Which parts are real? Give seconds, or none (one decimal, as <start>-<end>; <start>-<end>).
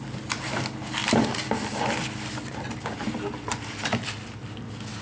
0.0-5.0